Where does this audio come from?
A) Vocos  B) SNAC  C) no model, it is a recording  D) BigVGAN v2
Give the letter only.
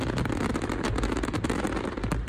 D